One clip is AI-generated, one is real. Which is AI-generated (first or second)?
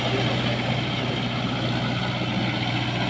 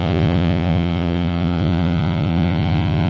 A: second